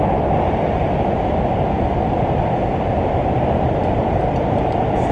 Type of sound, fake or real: fake